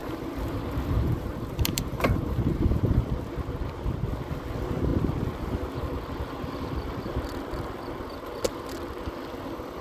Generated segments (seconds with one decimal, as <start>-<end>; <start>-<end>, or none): 0.0-3.0